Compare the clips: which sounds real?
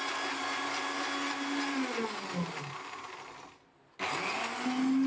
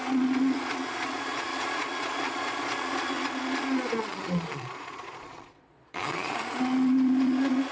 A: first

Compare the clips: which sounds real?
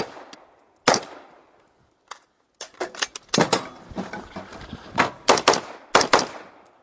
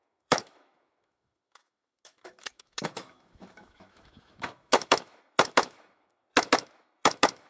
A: first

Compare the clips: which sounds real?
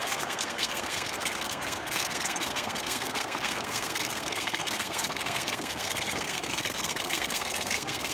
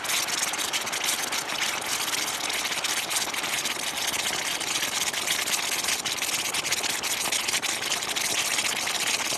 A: second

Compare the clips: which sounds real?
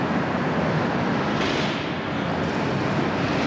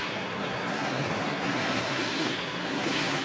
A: first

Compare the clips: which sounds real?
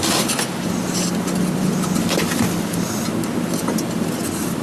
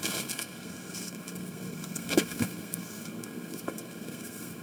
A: first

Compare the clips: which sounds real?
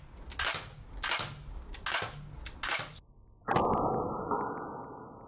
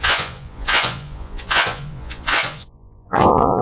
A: first